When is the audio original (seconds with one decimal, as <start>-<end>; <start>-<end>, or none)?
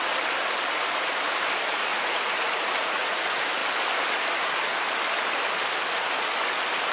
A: 0.0-1.9; 3.2-6.9